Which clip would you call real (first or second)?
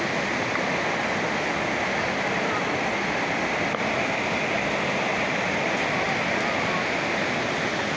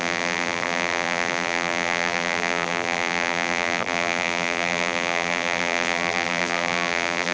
first